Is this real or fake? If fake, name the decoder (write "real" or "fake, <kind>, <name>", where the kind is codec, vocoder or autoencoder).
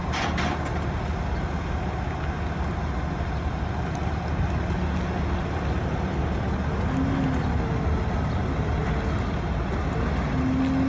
real